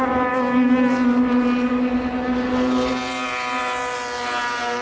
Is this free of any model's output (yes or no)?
yes